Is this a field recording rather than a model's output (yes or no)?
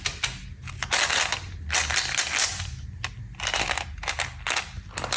yes